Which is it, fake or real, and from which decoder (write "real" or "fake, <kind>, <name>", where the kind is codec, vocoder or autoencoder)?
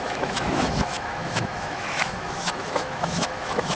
fake, autoencoder, DAC-VAE